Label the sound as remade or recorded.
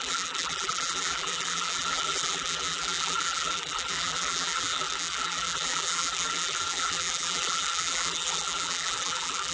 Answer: remade